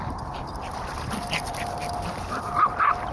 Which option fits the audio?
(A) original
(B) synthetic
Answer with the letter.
A